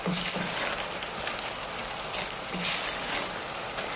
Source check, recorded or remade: recorded